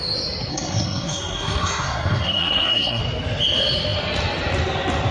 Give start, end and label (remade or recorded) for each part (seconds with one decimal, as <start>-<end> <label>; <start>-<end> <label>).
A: 0.0-0.5 recorded; 0.5-3.0 remade; 3.0-5.1 recorded